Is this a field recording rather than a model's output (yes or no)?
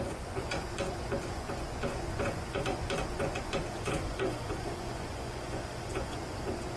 no